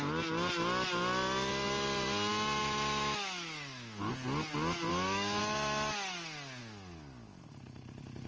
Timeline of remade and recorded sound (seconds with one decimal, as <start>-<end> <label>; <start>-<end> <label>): 0.0-2.6 recorded; 2.6-4.1 remade; 4.1-4.9 recorded; 4.9-5.4 remade; 5.4-8.3 recorded